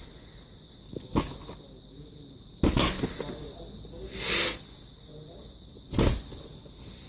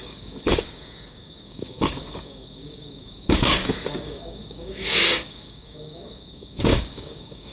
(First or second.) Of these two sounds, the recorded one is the first